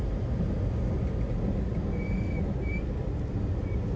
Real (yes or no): yes